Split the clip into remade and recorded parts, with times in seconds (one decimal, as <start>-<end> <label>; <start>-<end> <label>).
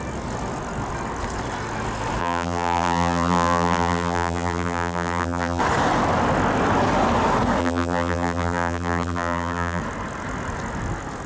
0.0-2.2 recorded; 2.2-5.6 remade; 5.6-7.6 recorded; 7.6-9.8 remade; 9.8-11.3 recorded